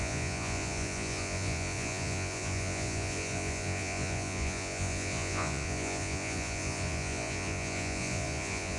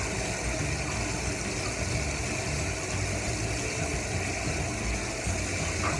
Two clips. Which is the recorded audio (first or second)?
second